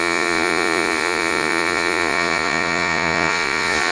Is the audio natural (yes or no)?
no